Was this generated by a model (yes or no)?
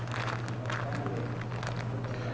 no